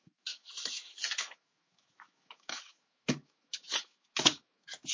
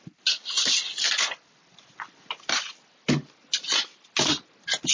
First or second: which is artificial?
first